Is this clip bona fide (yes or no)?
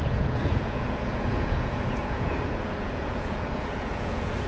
no